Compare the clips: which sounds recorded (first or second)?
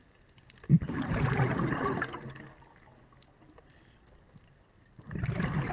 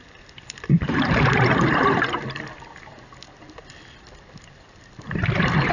first